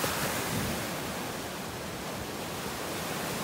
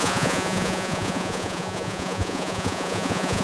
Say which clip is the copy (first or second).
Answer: second